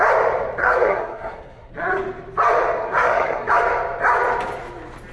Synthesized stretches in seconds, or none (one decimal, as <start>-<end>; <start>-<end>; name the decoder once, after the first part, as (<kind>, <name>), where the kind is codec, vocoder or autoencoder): 0.6-1.7 (codec, SNAC); 2.8-3.5